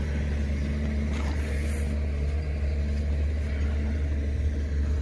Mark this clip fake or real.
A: real